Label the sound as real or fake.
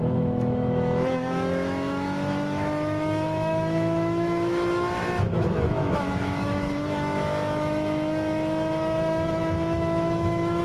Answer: fake